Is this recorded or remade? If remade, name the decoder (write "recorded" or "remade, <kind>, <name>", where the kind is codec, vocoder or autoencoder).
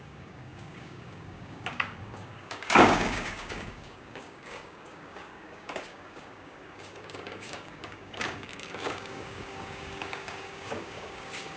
remade, codec, DAC